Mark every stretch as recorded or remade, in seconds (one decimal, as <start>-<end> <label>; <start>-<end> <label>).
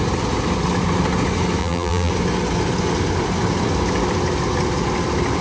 0.0-1.6 recorded; 1.6-2.1 remade; 2.1-5.4 recorded